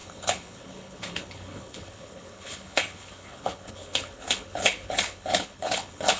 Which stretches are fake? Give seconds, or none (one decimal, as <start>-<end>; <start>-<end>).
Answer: 0.0-6.2